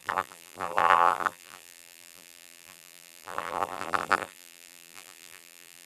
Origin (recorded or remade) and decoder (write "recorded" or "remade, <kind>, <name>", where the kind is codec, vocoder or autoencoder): remade, vocoder, BigVGAN v2